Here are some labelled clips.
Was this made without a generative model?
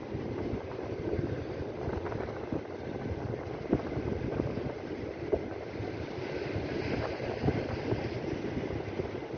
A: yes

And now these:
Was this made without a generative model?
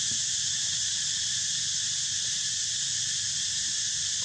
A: yes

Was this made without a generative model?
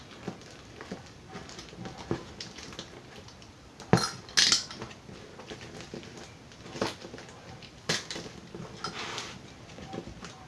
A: yes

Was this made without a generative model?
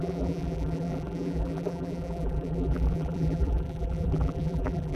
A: no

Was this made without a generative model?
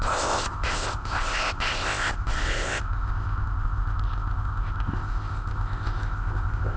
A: no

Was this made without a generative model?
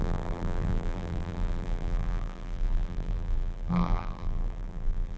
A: no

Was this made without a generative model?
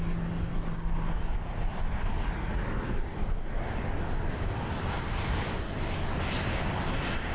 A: yes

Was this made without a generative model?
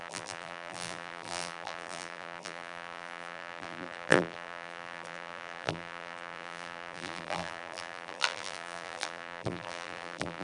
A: no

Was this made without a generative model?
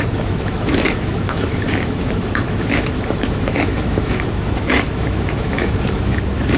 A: no